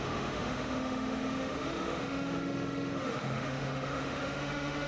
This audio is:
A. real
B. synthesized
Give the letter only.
B